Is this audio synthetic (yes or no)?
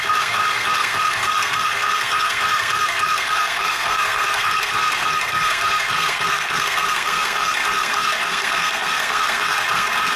yes